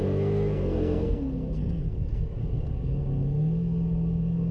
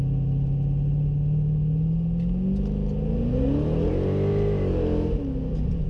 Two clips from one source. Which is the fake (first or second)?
first